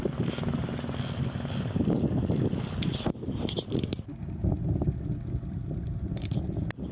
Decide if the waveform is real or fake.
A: real